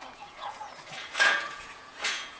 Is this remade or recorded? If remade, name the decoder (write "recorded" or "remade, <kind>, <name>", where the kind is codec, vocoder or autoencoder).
remade, vocoder, Vocos